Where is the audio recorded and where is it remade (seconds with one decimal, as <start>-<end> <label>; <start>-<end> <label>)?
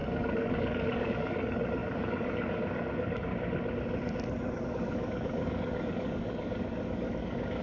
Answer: 0.0-3.3 remade; 3.3-4.7 recorded; 4.7-7.6 remade